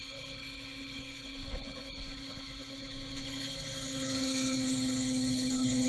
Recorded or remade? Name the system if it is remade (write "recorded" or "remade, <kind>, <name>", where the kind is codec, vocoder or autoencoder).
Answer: remade, codec, HILCodec